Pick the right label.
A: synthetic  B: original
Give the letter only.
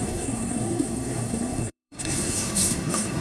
A